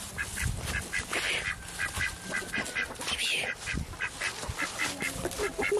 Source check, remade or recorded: recorded